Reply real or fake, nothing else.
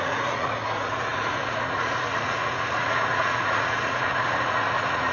fake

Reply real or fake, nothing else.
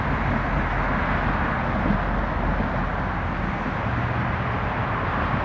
real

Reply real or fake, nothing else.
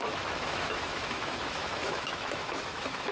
fake